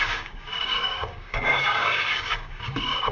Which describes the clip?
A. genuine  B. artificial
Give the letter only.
B